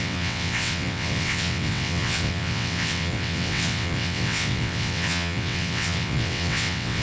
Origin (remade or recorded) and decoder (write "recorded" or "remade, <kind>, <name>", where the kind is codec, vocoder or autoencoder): remade, vocoder, WaveNeXt